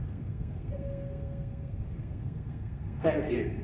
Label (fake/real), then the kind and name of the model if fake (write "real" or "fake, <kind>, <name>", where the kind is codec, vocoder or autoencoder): fake, codec, SNAC